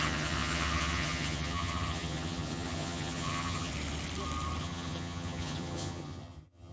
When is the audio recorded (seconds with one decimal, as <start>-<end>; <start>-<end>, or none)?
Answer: 3.7-4.6